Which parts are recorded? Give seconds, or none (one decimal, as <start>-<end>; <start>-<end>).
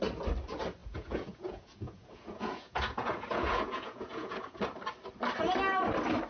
0.0-0.8; 4.6-6.3